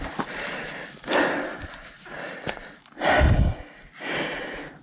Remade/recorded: recorded